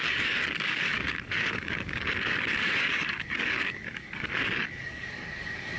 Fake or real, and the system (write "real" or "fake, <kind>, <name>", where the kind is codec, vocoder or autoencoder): fake, codec, DAC